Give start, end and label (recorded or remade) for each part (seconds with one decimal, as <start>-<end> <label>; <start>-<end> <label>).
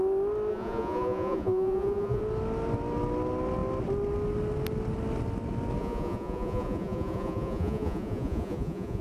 0.0-0.5 recorded; 0.5-2.2 remade; 2.2-5.8 recorded; 5.8-9.0 remade